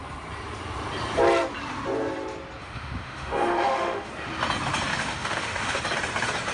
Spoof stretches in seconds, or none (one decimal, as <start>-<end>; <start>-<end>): 2.6-4.1; 4.9-5.8